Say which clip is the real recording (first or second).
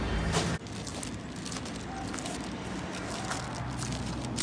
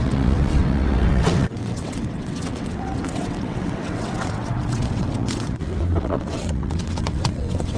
first